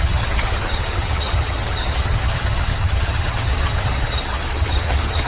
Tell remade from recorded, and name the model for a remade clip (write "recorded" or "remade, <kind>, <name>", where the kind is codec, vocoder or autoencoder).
remade, vocoder, HiFi-GAN